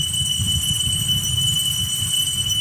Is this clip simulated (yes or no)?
no